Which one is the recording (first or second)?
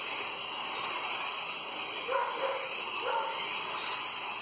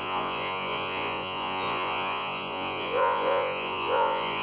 first